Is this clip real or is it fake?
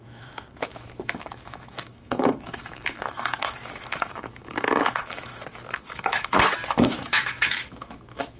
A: fake